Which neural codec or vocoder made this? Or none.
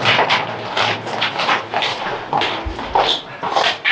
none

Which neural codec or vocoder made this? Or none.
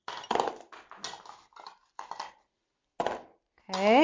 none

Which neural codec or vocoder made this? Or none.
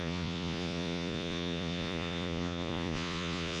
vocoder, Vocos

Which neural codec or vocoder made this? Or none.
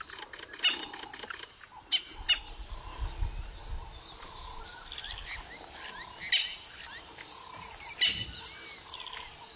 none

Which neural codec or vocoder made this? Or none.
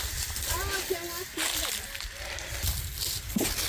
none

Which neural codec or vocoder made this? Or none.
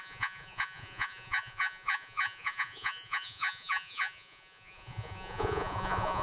vocoder, Vocos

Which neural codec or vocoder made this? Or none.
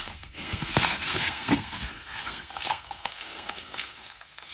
codec, SNAC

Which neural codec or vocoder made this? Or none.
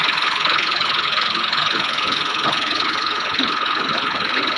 codec, HILCodec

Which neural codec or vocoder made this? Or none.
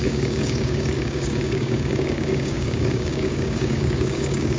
codec, DAC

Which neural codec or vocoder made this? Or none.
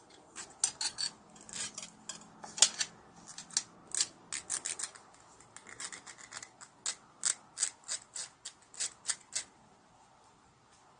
none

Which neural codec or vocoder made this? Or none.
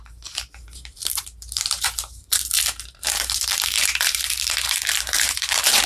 vocoder, BigVGAN v2